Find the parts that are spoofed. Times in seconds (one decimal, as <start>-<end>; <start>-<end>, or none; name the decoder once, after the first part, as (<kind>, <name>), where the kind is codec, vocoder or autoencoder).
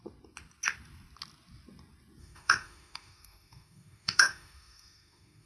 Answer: 2.2-5.5 (autoencoder, DAC-VAE)